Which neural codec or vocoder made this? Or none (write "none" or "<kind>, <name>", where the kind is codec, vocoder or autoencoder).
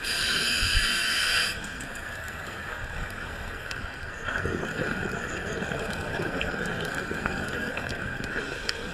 codec, SNAC